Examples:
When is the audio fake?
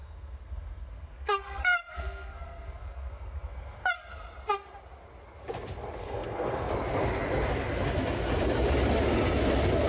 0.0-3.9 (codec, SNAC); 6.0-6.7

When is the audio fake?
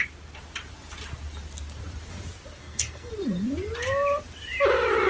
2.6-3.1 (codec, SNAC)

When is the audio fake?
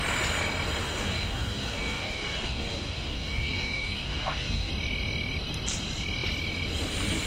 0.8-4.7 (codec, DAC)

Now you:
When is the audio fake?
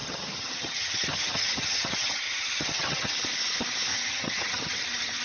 0.0-3.1 (vocoder, HiFi-GAN); 3.9-5.2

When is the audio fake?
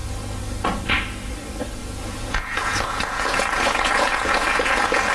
1.8-5.1 (vocoder, Vocos)